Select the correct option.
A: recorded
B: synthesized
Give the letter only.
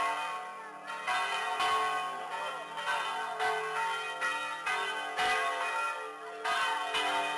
A